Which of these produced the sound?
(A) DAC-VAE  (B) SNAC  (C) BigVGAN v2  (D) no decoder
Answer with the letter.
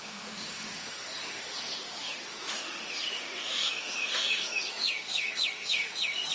A